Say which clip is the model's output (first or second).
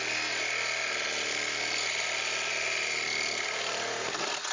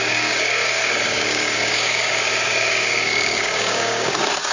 second